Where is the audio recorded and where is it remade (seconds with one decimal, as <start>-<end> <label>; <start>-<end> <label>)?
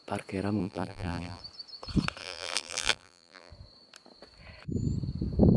0.0-0.6 recorded; 0.6-1.4 remade; 1.4-2.2 recorded; 2.2-3.5 remade; 3.5-5.6 recorded